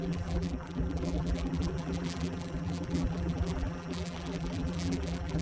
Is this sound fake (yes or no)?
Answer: yes